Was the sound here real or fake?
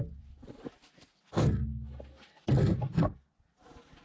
real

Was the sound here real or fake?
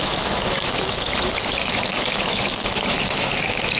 fake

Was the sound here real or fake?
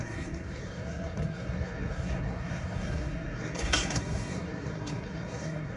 fake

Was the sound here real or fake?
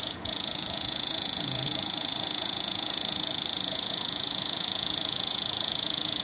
fake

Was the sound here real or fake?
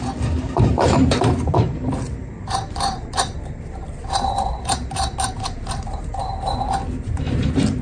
fake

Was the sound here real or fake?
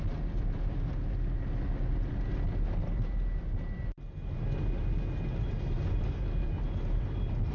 real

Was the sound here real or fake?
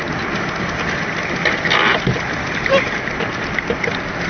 real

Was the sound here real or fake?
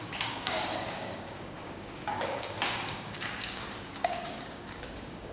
fake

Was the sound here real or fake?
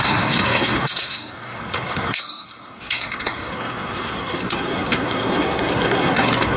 fake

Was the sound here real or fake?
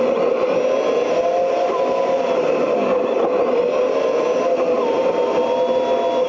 real